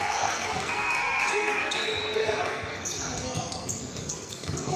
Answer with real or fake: fake